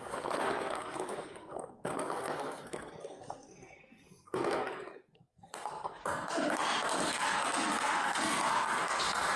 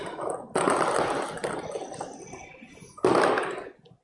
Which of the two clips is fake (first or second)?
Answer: first